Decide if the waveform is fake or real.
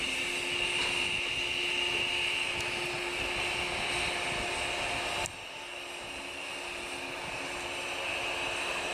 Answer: real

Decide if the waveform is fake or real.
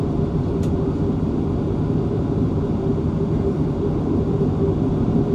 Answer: fake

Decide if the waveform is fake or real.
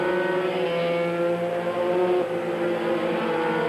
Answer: real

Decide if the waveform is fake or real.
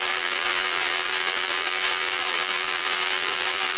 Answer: fake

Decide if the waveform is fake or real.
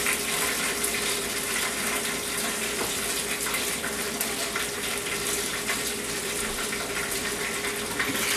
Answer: fake